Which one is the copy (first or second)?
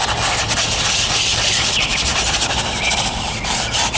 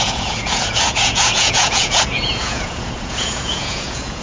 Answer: second